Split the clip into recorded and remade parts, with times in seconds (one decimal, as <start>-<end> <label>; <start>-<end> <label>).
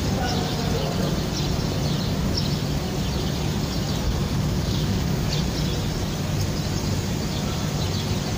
0.0-4.2 recorded; 4.2-5.3 remade; 5.3-8.4 recorded